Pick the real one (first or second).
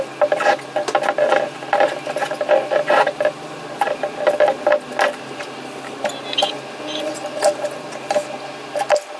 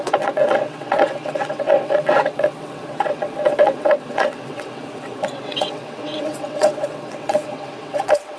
first